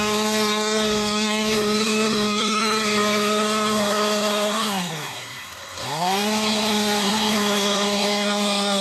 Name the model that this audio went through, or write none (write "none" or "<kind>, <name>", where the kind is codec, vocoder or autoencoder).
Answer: codec, SNAC